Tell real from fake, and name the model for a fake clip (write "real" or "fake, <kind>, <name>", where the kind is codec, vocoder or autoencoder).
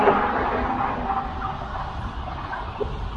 real